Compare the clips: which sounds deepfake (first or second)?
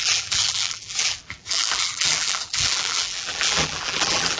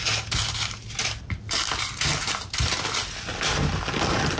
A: first